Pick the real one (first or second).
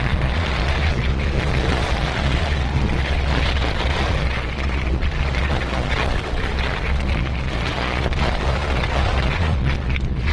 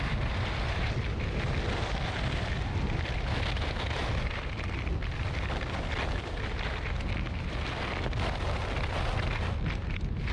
second